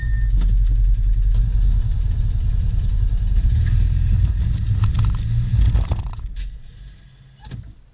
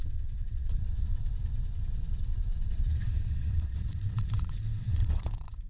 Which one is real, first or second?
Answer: first